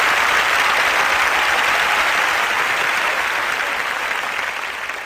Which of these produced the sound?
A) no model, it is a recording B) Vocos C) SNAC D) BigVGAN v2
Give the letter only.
A